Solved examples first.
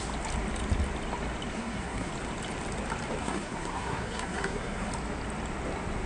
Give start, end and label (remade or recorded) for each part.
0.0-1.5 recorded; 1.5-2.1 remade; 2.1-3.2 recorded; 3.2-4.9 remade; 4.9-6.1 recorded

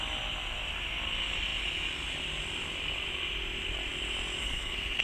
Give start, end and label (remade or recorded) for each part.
0.0-4.4 recorded; 4.4-5.0 remade